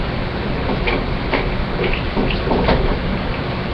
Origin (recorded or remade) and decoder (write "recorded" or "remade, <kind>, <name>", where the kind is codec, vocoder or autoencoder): remade, vocoder, BigVGAN v2